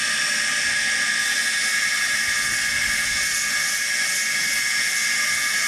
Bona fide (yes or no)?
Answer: yes